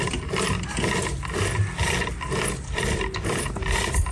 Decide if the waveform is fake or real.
real